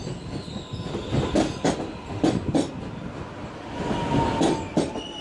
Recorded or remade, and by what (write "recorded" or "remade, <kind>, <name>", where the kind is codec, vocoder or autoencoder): recorded